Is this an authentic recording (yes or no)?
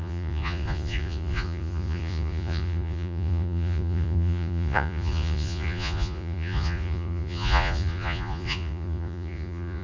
no